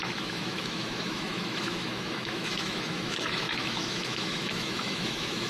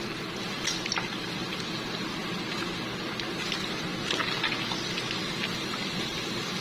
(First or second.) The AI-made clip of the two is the first